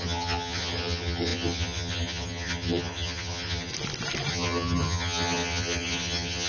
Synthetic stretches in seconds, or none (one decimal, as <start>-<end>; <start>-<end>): 0.0-3.7; 4.3-6.5

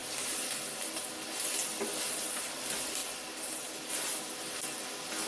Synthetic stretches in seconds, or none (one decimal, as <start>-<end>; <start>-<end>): none

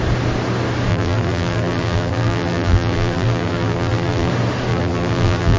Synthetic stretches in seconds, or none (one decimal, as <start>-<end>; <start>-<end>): 0.9-4.3; 4.7-5.6

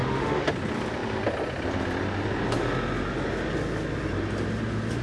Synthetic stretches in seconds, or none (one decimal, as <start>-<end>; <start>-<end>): 0.0-0.5

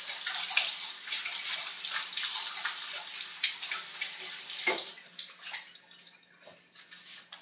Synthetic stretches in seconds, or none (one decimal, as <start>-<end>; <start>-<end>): none

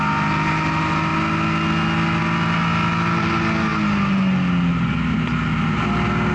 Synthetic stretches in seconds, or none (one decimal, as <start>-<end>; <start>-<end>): none